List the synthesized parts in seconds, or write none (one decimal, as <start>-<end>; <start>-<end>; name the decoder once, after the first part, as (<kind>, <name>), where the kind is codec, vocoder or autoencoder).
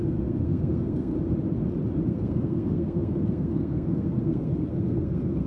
0.0-1.1 (codec, SNAC); 2.1-5.5